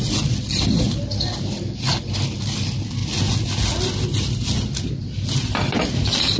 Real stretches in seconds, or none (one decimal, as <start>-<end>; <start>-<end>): 0.0-6.4